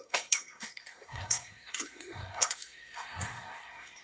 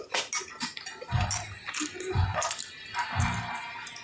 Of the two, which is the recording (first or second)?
second